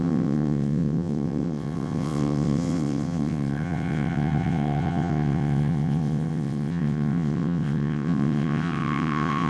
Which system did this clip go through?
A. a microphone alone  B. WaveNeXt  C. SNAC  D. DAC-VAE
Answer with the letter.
B